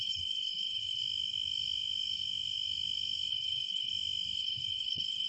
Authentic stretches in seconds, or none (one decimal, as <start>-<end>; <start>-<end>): 1.0-3.3; 3.9-4.4